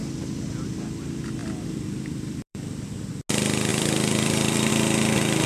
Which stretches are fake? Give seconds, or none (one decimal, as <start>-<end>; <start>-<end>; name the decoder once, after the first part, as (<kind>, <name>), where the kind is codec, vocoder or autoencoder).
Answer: 1.4-3.1 (vocoder, BigVGAN v2); 3.7-4.7